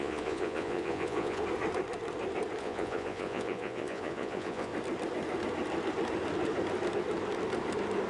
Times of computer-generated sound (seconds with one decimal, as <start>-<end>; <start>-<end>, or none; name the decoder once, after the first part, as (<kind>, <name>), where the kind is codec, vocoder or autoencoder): 0.0-1.4 (vocoder, Vocos); 2.6-4.7